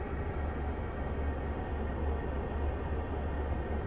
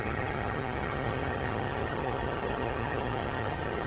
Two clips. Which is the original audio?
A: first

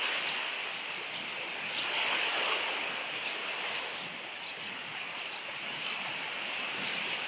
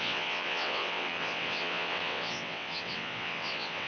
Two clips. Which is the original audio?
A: first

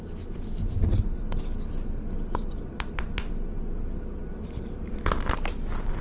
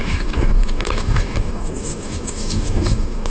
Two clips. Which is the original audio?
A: first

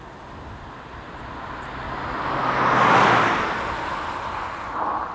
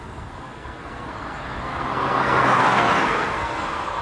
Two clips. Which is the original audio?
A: first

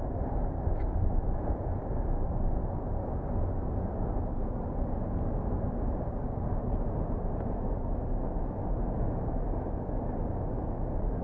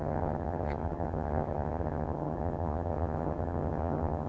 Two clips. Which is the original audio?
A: first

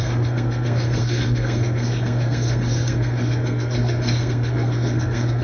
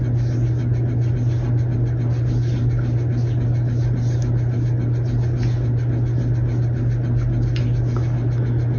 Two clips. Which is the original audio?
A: second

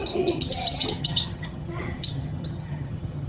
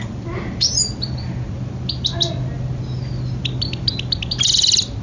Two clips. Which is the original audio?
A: second